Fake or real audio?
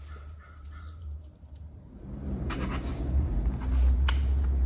fake